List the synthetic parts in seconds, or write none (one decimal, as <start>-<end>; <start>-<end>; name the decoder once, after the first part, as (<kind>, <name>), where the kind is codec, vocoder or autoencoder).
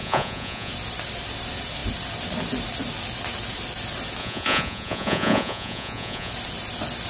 0.0-0.7 (vocoder, Vocos); 4.2-6.3